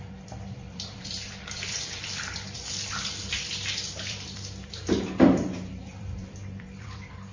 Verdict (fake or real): fake